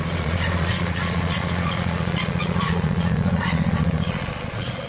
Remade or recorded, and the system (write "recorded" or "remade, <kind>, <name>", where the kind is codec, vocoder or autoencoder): remade, vocoder, Vocos